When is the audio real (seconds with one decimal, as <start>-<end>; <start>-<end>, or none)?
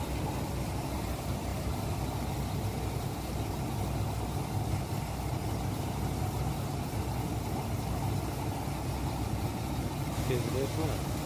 0.0-11.3